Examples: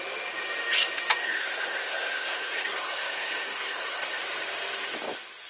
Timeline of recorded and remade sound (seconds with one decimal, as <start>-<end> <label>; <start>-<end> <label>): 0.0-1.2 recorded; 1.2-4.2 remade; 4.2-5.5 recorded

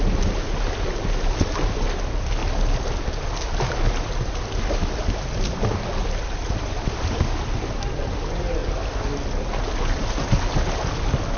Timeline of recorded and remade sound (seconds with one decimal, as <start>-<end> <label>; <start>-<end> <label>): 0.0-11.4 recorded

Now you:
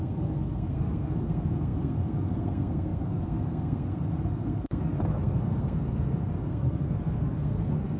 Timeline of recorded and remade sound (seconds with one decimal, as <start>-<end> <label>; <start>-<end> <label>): 0.0-8.0 remade

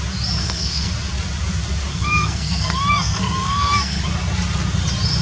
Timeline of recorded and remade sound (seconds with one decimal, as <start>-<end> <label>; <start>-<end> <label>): 0.0-0.4 recorded; 0.4-0.9 remade; 0.9-1.9 recorded; 1.9-4.0 remade; 4.0-5.2 recorded